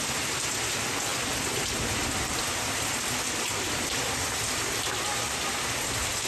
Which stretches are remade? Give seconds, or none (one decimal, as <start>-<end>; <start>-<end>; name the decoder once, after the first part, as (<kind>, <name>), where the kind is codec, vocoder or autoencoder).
1.1-4.9 (vocoder, BigVGAN v2)